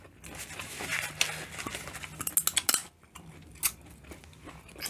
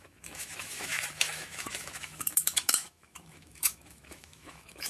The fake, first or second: second